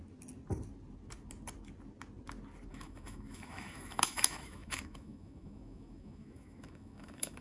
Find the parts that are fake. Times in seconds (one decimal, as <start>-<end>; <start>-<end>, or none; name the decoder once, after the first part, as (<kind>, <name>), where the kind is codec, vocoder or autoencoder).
2.7-7.4 (autoencoder, DAC-VAE)